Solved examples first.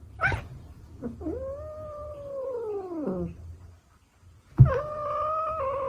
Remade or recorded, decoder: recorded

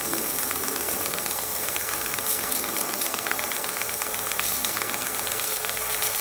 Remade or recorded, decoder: remade, codec, SNAC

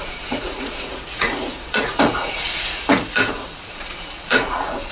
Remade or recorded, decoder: remade, vocoder, Vocos